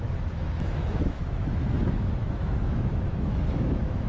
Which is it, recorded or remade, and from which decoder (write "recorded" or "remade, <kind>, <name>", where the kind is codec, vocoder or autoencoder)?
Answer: remade, autoencoder, DAC-VAE